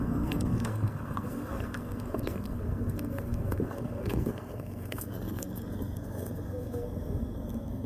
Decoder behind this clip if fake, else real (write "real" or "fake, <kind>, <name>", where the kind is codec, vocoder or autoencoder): fake, codec, SNAC